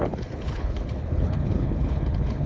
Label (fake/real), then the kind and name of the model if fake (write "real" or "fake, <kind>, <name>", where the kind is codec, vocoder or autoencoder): fake, codec, HILCodec